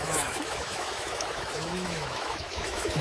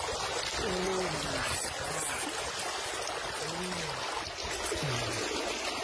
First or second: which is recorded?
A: second